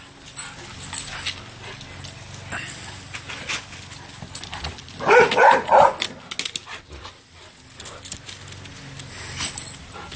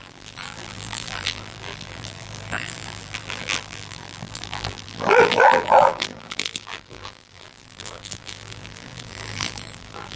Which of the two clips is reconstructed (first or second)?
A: second